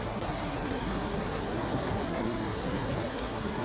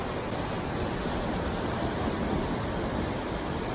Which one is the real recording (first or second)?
second